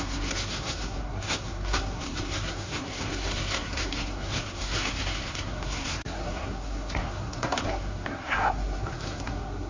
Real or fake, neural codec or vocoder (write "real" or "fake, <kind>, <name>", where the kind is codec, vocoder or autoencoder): fake, codec, SNAC